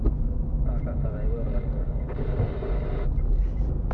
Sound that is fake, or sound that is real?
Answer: real